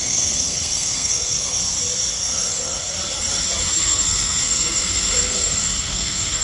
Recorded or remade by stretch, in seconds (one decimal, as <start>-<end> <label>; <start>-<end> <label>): 0.0-1.6 remade; 1.6-2.1 recorded; 2.1-2.8 remade; 2.8-3.8 recorded; 3.8-6.4 remade

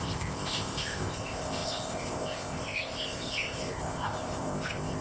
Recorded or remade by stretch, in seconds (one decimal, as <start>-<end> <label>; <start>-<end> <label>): 0.0-5.0 remade

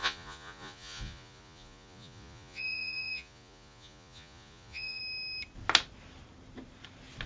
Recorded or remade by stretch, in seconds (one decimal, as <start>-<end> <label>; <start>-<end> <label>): 0.0-5.0 remade; 5.0-7.3 recorded